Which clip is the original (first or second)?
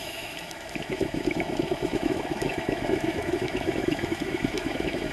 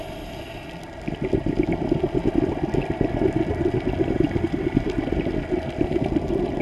second